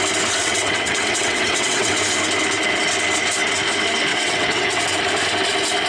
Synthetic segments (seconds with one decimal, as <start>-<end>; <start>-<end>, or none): 0.4-1.9; 4.1-4.8